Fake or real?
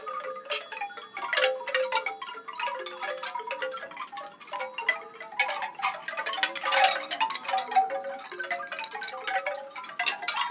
real